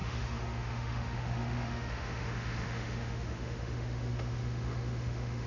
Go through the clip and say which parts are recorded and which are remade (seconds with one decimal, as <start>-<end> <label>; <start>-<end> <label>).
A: 0.0-5.5 remade